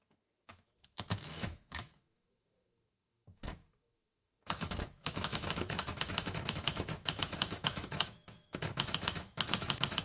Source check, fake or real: fake